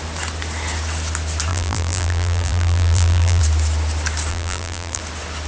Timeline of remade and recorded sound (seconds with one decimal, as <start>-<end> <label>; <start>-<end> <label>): 0.0-1.5 recorded; 1.5-3.4 remade; 3.4-4.3 recorded; 4.3-5.0 remade; 5.0-5.5 recorded